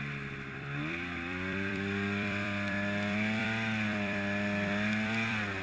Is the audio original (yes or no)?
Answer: no